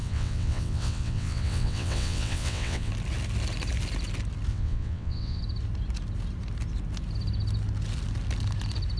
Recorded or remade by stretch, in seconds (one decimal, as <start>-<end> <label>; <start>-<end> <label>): 0.0-2.9 remade; 2.9-4.5 recorded; 4.5-5.4 remade; 5.4-9.0 recorded

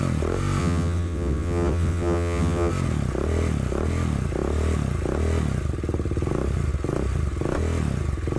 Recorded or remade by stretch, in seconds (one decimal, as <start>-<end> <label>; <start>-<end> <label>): 0.0-0.6 recorded; 0.6-2.7 remade; 2.7-8.4 recorded

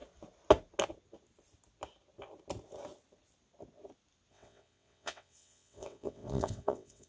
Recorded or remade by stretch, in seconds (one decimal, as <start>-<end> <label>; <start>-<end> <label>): 0.0-4.3 recorded; 4.3-7.1 remade

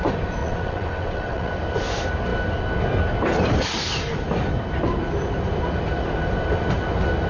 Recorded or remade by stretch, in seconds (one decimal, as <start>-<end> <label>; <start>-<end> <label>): 0.0-0.4 recorded; 0.4-1.5 remade; 1.5-7.3 recorded

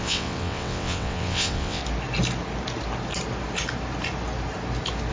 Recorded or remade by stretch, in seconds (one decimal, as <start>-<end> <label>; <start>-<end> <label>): 0.0-1.8 remade; 1.8-5.1 recorded

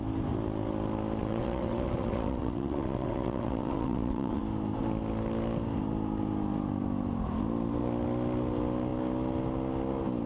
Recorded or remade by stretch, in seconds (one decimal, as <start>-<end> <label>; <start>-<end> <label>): 0.0-1.2 recorded; 1.2-4.4 remade; 4.4-10.3 recorded

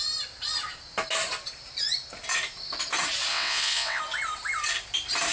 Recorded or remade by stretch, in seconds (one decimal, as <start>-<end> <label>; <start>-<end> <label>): 0.0-3.3 recorded; 3.3-4.0 remade; 4.0-5.3 recorded